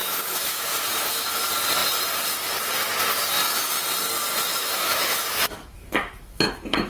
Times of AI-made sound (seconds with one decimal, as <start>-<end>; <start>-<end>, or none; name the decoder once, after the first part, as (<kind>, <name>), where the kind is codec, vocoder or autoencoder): 0.0-1.4 (autoencoder, DAC-VAE); 4.5-6.9